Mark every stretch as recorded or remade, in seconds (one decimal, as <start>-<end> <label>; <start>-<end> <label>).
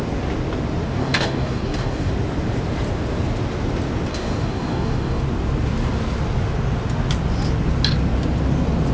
0.0-1.0 recorded; 1.0-2.1 remade; 2.1-4.1 recorded; 4.1-5.2 remade; 5.2-8.9 recorded